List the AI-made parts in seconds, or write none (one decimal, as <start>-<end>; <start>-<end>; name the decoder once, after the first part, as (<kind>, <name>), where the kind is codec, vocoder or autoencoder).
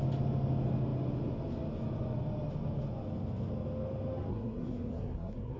4.3-5.6 (codec, SNAC)